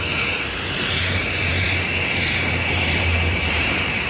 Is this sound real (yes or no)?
no